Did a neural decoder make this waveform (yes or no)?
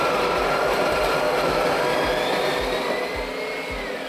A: no